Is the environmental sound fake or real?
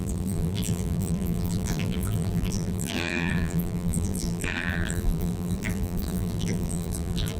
fake